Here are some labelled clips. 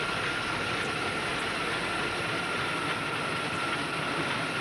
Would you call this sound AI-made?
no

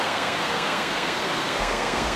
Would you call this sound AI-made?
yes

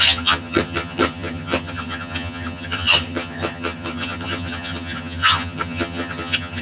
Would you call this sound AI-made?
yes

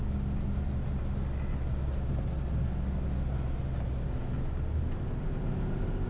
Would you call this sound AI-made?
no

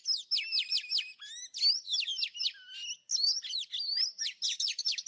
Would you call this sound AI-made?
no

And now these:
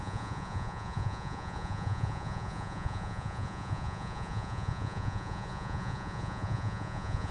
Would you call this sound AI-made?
yes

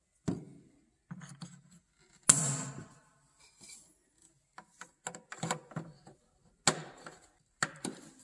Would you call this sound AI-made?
no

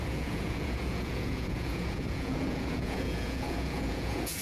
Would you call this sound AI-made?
yes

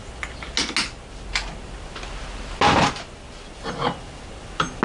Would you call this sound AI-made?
no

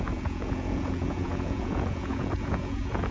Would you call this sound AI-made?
yes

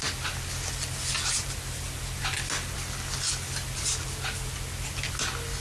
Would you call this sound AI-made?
no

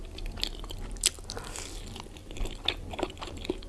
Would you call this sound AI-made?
no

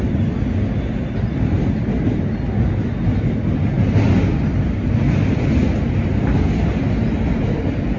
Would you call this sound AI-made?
no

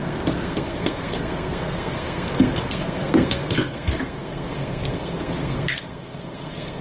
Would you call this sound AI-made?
yes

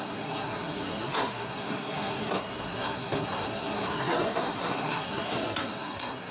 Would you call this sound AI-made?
yes